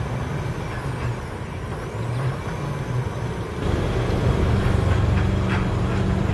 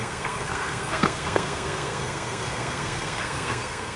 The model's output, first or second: second